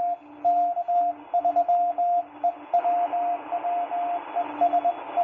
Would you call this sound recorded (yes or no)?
yes